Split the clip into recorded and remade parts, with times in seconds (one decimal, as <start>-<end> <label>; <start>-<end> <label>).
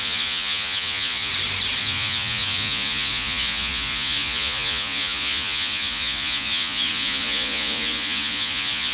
0.0-1.3 remade; 1.3-1.8 recorded; 1.8-8.9 remade